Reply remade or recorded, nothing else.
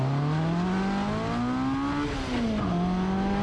recorded